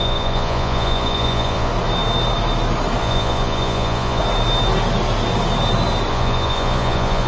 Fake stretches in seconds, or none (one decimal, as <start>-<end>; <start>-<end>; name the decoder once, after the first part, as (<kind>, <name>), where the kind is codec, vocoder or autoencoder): 0.0-1.7 (vocoder, Vocos); 3.0-4.2; 6.1-7.3